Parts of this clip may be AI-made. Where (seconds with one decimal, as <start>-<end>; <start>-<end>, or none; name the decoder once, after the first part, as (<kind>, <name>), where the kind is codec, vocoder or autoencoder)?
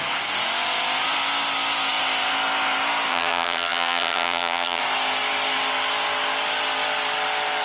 3.1-4.8 (vocoder, HiFi-GAN)